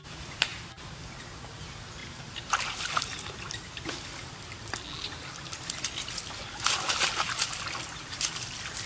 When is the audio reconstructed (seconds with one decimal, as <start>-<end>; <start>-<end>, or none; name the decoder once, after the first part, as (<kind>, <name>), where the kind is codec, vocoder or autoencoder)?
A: none